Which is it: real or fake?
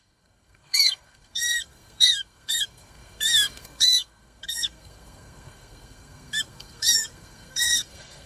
fake